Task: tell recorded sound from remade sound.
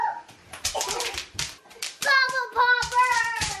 recorded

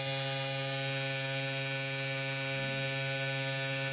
recorded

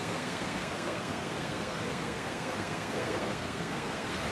remade